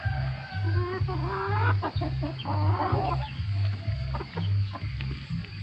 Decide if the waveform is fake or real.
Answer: fake